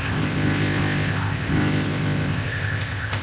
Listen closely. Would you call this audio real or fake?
fake